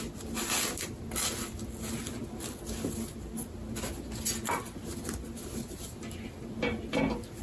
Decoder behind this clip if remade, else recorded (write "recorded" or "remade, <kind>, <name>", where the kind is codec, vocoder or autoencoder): recorded